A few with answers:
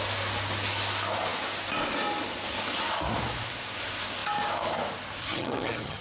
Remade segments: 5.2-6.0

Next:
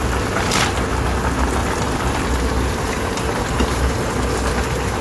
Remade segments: 1.6-4.5

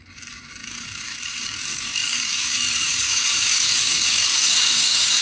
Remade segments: 0.0-5.2

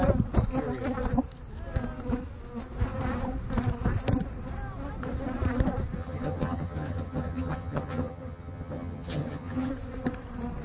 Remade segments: 6.0-9.7

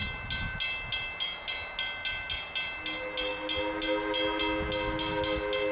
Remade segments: none

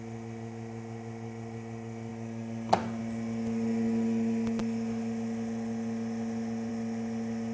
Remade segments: none